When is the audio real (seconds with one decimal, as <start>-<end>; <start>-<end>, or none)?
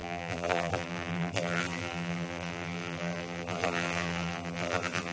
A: none